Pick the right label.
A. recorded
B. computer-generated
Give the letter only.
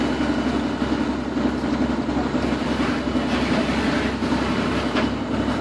A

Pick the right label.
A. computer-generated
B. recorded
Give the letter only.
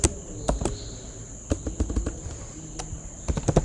B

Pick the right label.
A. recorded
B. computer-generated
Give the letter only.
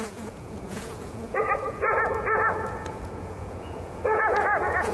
B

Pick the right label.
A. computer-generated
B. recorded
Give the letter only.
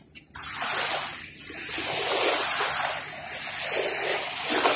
B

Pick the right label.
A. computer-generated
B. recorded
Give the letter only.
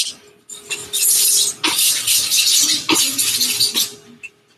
B